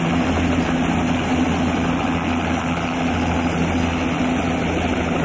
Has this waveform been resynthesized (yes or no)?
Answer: no